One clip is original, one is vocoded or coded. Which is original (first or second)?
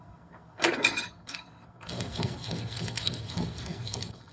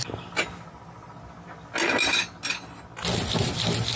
second